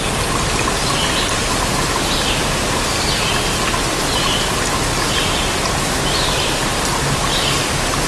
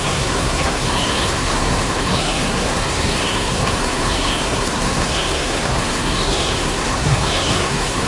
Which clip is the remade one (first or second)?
second